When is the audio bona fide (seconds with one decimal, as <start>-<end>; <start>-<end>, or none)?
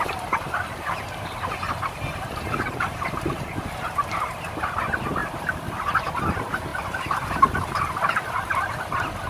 0.0-6.7; 7.4-9.3